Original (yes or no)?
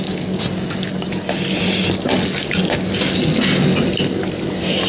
yes